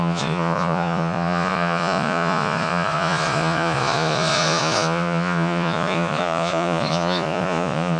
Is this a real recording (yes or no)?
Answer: no